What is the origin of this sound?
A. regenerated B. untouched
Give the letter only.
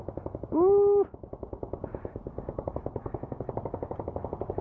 B